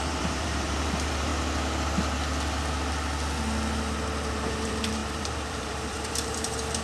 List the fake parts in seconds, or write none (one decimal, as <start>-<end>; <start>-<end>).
0.0-1.3; 4.3-6.8

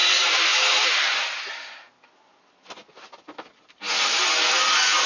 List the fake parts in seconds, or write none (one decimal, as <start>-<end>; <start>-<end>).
0.0-1.7

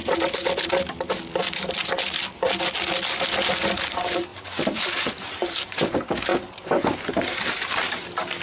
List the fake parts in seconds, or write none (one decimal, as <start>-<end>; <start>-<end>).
3.8-8.4

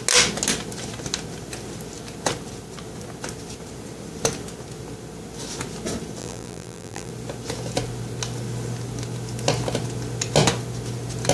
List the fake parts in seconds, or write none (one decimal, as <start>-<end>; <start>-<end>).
6.2-7.1

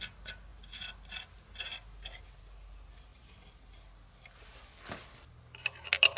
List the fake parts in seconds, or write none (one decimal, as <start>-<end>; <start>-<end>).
none

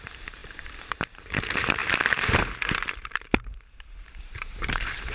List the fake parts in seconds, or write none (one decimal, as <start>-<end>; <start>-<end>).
0.0-5.1

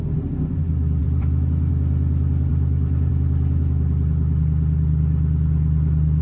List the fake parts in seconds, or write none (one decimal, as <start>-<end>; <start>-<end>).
1.0-1.7; 2.5-3.1

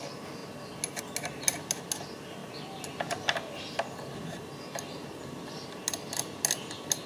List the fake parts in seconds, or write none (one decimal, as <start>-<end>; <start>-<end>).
none